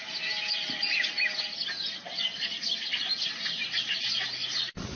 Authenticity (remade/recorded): recorded